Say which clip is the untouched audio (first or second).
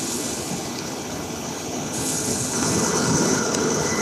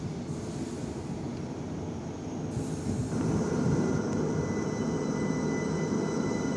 second